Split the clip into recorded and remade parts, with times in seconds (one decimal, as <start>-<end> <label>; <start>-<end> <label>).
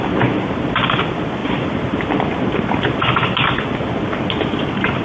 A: 0.0-5.0 recorded